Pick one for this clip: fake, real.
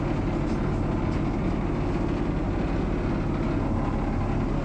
real